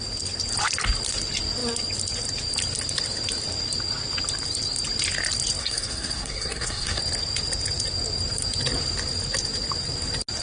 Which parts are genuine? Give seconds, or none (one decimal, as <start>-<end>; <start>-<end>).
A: 0.0-5.6; 7.0-10.4